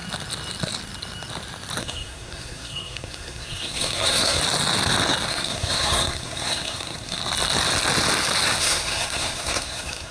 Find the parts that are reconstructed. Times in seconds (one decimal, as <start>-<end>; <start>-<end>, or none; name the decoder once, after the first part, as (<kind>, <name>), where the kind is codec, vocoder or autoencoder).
1.8-4.4 (codec, SNAC); 5.3-7.2; 8.6-10.1